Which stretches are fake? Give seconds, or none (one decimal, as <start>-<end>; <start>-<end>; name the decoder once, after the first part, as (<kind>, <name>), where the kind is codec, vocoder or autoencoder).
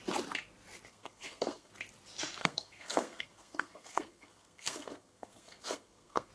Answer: 0.9-1.7 (codec, SNAC); 2.4-6.3